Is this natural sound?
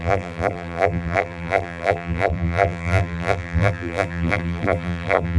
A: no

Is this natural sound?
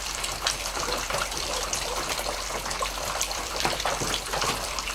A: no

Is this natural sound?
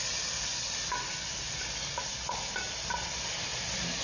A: yes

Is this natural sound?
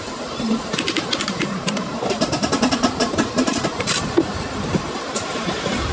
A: no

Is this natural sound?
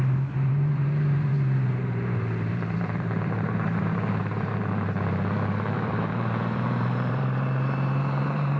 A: no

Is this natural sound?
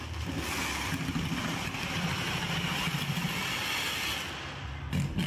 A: yes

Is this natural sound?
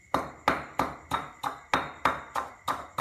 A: yes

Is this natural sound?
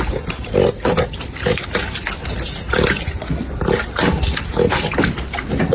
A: yes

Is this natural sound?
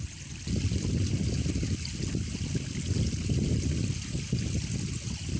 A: yes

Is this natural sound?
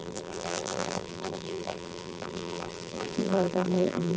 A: no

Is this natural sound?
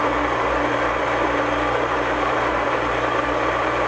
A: no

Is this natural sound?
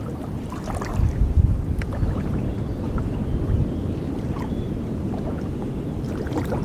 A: yes